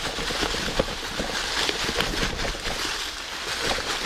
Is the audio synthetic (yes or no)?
no